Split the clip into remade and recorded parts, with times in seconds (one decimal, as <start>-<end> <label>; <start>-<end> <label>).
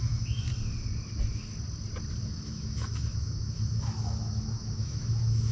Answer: 0.0-0.5 remade; 0.5-2.3 recorded; 2.3-5.5 remade